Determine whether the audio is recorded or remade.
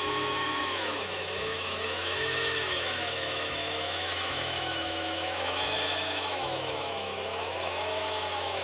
remade